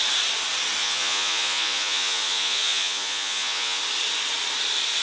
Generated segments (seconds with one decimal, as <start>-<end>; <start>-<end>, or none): 0.8-3.8